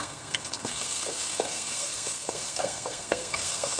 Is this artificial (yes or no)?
yes